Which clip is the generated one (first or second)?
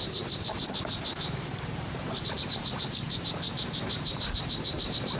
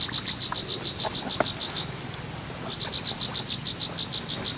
first